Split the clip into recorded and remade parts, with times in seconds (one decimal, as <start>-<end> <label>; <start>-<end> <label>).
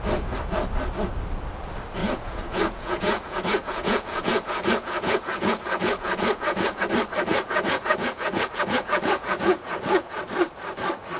0.0-2.0 recorded; 2.0-6.8 remade; 6.8-7.3 recorded; 7.3-10.2 remade; 10.2-11.2 recorded